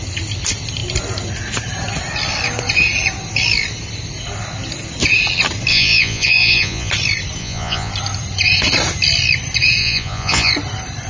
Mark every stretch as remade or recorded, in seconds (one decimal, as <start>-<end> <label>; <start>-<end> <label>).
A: 0.0-5.7 recorded; 5.7-6.9 remade; 6.9-7.4 recorded; 7.4-7.9 remade; 7.9-9.8 recorded; 9.8-10.5 remade; 10.5-11.1 recorded